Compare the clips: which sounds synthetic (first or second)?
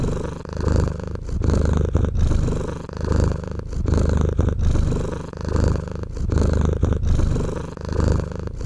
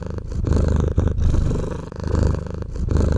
second